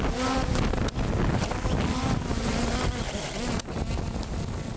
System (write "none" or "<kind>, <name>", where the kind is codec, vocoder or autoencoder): none